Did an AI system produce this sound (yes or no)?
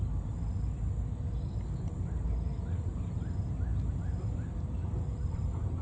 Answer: no